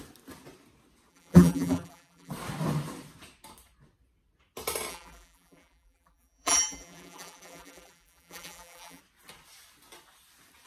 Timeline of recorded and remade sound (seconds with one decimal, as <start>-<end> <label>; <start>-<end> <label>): 0.0-1.1 recorded; 1.1-2.3 remade; 2.3-4.9 recorded; 4.9-9.0 remade; 9.0-10.7 recorded